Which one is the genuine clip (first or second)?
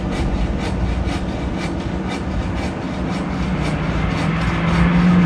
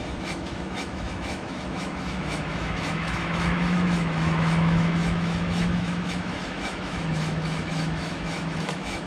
first